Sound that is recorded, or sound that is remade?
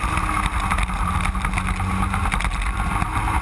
recorded